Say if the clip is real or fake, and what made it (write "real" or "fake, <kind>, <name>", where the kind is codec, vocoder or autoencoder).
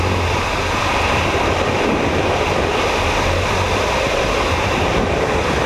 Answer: real